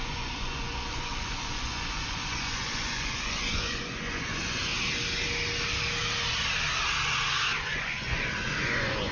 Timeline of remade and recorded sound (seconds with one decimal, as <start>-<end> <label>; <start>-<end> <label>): 0.0-4.7 remade; 4.7-7.6 recorded; 7.6-9.1 remade